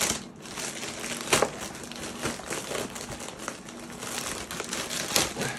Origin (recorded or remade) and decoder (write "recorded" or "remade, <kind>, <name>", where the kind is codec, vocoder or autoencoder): recorded